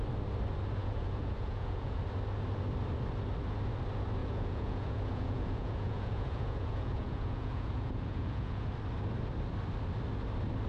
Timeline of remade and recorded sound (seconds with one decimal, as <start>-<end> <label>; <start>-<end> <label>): 0.0-0.8 recorded; 0.8-2.0 remade; 2.0-4.2 recorded; 4.2-8.7 remade; 8.7-10.7 recorded